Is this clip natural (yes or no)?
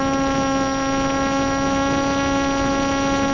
yes